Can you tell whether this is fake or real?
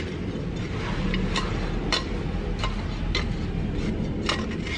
real